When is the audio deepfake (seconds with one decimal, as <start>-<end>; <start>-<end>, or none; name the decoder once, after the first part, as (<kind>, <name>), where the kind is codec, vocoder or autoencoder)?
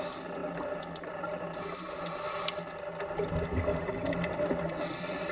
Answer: none